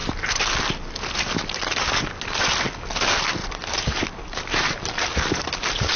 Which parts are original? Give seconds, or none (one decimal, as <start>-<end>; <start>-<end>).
0.0-3.4